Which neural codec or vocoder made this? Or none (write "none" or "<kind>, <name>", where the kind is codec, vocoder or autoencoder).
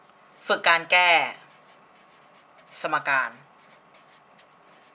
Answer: none